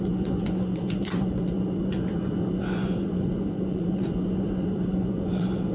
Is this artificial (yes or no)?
yes